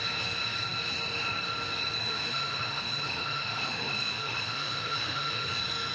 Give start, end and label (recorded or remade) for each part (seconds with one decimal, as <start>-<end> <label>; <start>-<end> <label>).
0.0-2.0 recorded; 2.0-5.5 remade; 5.5-5.9 recorded